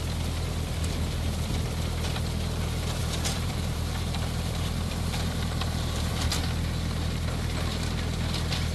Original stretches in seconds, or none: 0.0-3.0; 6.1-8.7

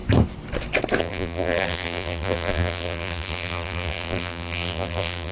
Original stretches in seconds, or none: 0.0-1.0

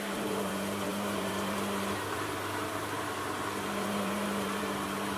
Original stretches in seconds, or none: none

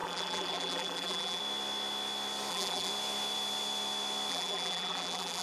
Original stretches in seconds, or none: 1.4-2.5; 2.9-4.3

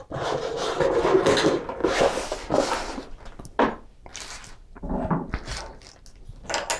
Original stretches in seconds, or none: 0.0-1.8; 2.7-6.8

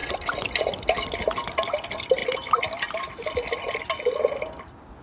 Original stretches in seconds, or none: 0.0-5.0